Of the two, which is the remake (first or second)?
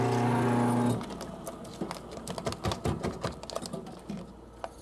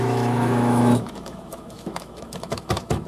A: second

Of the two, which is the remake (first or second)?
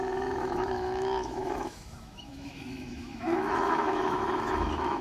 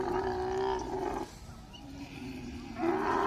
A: first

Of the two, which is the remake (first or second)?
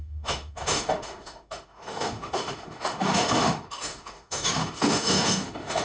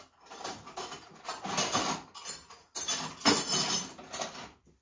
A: first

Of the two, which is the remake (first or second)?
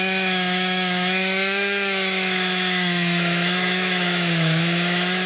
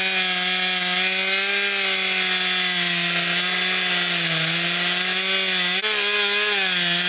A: first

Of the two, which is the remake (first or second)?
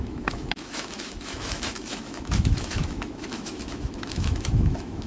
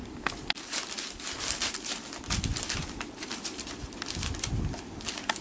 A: first